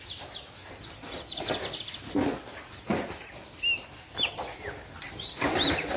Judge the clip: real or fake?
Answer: real